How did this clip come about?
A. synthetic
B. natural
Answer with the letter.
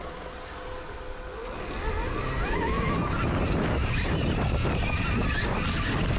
B